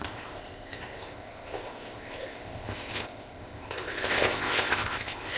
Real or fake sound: fake